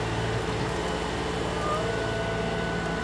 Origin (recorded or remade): recorded